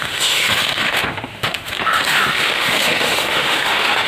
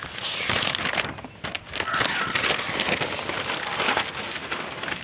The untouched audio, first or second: second